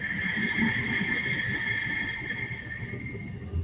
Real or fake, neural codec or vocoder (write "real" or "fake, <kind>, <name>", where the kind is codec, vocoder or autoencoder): real